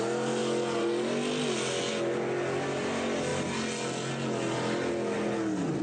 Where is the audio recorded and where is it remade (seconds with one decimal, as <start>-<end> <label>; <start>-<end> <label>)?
0.0-5.8 recorded